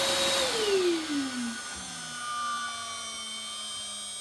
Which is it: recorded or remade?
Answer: recorded